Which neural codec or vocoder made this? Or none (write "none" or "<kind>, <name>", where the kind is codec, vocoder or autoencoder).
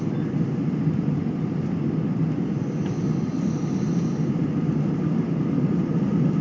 none